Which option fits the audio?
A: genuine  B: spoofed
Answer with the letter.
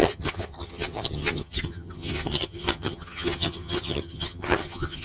B